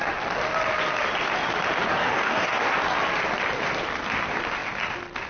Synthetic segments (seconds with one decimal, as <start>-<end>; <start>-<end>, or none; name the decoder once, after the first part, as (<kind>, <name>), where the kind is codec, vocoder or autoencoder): 1.9-2.7 (codec, DAC)